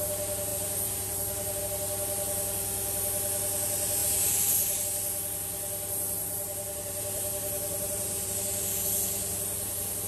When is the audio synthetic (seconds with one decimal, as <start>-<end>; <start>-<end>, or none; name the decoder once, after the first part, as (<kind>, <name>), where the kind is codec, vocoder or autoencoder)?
0.5-1.6 (vocoder, BigVGAN v2); 4.0-4.8; 6.2-8.3